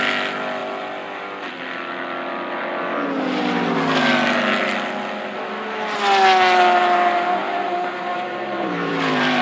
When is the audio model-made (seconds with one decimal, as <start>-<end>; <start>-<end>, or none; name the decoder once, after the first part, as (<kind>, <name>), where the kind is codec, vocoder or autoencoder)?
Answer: 7.4-9.4 (vocoder, BigVGAN v2)